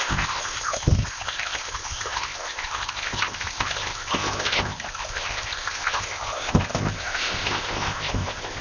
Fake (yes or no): yes